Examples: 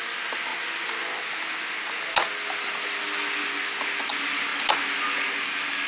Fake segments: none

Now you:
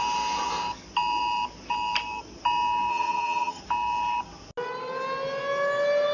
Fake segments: 2.9-3.6 (vocoder, HiFi-GAN)